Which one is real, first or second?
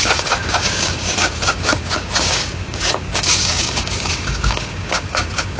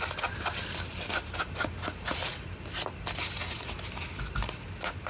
second